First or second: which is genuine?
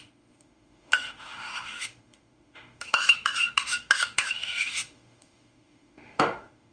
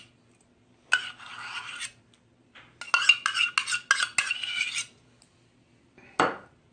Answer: second